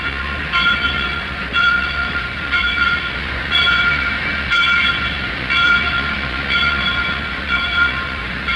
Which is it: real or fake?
fake